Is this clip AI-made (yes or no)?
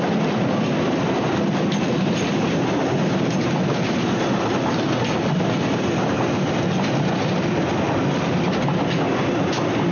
no